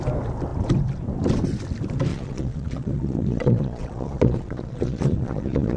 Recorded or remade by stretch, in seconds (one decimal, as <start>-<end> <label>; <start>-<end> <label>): 0.0-2.1 recorded; 2.1-5.8 remade